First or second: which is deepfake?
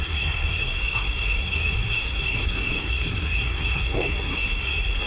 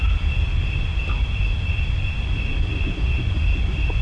first